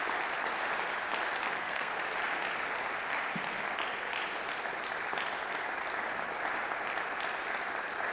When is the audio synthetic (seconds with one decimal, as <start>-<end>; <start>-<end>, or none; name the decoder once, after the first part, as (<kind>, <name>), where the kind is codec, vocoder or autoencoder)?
1.5-2.0 (codec, SNAC)